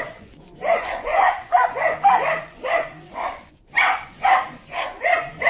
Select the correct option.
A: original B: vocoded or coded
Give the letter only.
B